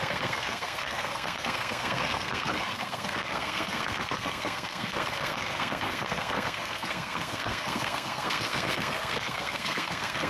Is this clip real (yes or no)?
no